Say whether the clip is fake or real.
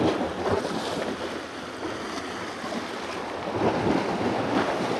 real